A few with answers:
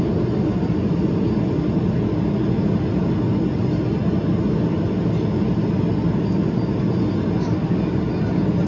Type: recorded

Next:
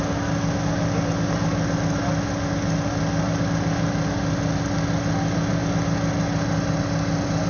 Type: recorded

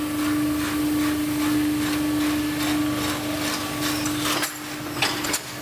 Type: recorded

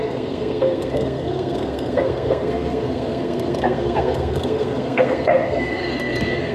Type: remade